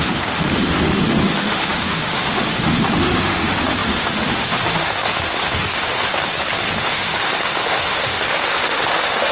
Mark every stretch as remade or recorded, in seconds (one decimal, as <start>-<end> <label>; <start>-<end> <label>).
0.0-6.1 remade; 6.1-6.8 recorded; 6.8-9.3 remade